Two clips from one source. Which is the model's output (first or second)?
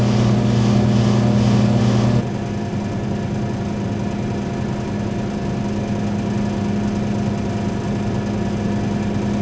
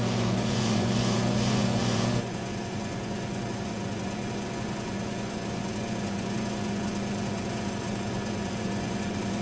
second